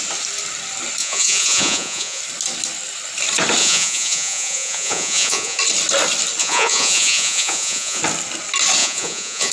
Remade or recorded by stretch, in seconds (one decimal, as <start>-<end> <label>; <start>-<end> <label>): 0.0-1.0 recorded; 1.0-2.2 remade; 2.2-3.6 recorded; 3.6-5.6 remade; 5.6-6.4 recorded; 6.4-8.0 remade; 8.0-8.8 recorded; 8.8-9.5 remade